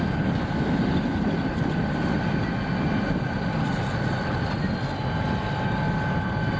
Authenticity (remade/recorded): recorded